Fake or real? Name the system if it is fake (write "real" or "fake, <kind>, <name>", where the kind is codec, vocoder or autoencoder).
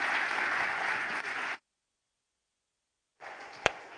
fake, vocoder, Vocos